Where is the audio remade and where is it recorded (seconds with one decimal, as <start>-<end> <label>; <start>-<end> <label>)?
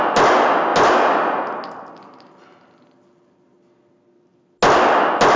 0.0-5.4 recorded